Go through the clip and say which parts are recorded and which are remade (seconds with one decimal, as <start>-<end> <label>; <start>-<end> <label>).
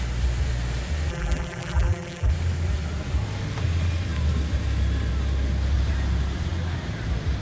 0.0-1.1 recorded; 1.1-2.3 remade; 2.3-7.4 recorded